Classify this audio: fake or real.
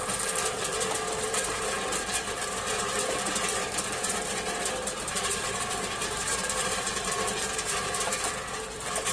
fake